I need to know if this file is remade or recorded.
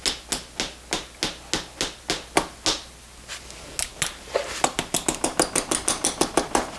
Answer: recorded